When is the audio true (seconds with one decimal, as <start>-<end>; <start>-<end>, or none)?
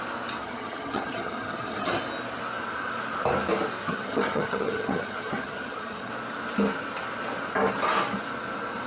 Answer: 0.0-0.4; 2.0-3.8; 6.1-8.9